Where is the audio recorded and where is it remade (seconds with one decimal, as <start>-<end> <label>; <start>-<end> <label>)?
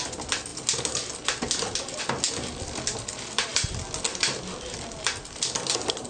0.0-6.1 recorded